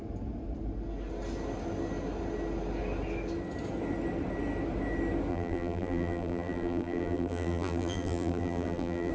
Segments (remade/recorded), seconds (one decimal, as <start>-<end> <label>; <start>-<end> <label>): 0.0-5.3 recorded; 5.3-9.1 remade